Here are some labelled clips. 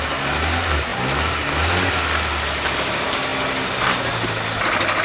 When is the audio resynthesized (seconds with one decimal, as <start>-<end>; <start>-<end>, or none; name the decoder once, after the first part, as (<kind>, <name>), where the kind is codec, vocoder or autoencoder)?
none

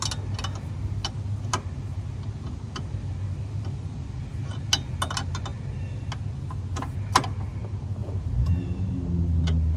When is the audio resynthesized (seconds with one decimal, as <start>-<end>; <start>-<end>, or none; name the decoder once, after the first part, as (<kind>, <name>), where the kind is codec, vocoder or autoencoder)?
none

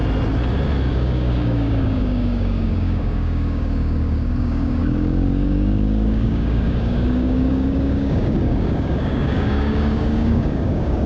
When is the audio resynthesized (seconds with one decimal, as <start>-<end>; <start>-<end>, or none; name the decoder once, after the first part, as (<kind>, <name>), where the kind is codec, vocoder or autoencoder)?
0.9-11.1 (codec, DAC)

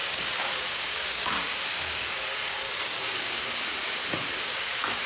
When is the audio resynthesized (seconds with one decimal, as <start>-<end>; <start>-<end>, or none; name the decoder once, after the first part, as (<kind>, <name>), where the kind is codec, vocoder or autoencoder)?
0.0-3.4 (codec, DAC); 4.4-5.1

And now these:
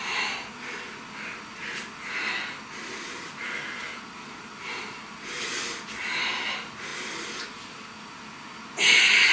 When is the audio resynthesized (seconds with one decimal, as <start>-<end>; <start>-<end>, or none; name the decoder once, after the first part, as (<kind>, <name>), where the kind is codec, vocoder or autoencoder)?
none